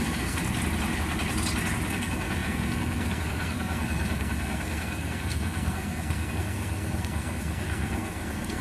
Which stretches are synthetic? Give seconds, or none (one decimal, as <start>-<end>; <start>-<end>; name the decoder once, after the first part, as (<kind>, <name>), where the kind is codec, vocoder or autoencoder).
0.0-0.4 (codec, SNAC); 1.9-8.6